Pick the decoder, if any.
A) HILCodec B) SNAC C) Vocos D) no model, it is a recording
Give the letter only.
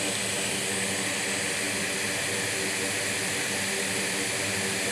D